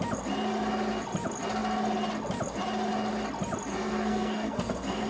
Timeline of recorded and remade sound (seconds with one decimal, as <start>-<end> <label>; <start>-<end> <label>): 0.0-3.7 recorded; 3.7-5.1 remade